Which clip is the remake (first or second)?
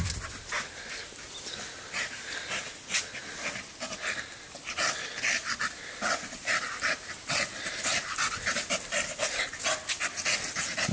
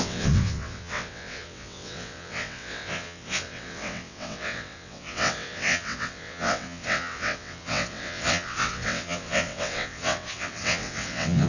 second